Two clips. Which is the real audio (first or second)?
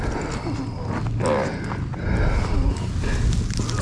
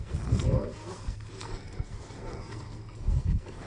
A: first